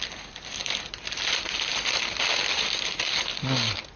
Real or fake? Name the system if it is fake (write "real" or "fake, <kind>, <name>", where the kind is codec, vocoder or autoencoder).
real